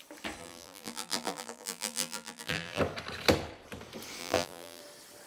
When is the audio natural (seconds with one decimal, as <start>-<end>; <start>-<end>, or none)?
0.0-0.4; 2.8-4.2; 4.8-5.3